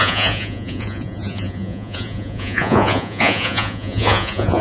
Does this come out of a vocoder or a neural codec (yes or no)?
yes